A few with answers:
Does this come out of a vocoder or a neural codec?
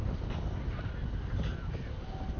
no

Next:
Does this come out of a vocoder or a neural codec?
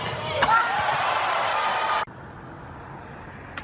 no